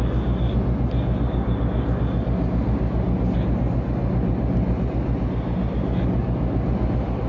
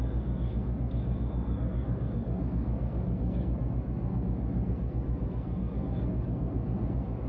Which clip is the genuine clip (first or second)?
first